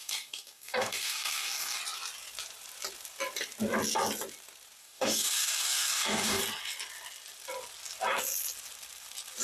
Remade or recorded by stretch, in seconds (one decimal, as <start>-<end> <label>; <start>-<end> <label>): 0.0-1.8 remade; 1.8-4.8 recorded; 4.8-6.4 remade; 6.4-9.4 recorded